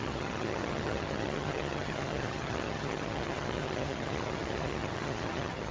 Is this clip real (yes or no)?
no